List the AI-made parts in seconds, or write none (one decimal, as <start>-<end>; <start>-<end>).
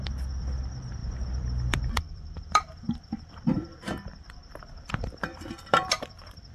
0.0-6.5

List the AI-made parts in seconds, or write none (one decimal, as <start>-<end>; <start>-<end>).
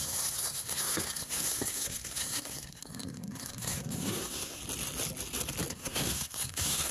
0.0-4.6; 5.7-6.9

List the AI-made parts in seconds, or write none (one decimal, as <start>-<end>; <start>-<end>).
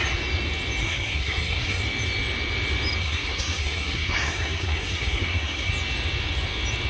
0.8-1.8; 3.0-5.7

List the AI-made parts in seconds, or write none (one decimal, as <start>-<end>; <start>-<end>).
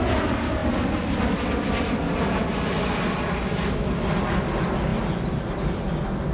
none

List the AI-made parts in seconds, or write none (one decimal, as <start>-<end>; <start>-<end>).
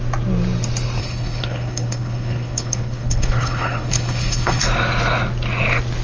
1.0-4.6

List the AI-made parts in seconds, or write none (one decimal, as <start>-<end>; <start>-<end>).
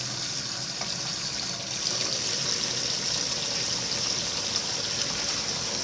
none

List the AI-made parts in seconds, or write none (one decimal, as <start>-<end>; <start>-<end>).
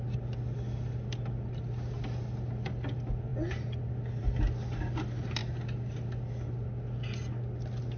none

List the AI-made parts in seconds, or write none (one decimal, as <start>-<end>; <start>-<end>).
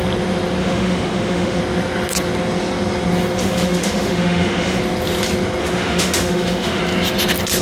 0.6-1.6; 3.4-4.8; 5.6-6.8